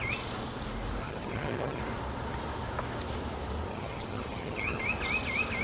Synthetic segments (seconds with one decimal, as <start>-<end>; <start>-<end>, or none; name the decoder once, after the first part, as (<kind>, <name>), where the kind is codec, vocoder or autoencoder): 1.0-1.8 (vocoder, HiFi-GAN); 3.7-4.8